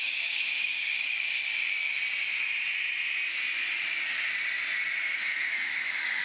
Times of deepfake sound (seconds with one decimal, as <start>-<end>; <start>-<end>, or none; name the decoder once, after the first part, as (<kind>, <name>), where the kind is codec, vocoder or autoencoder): 0.0-2.0 (codec, DAC); 5.4-6.2